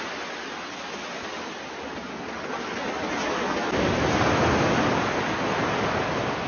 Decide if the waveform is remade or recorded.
recorded